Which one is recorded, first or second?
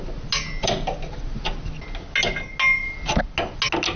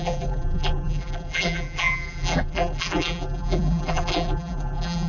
first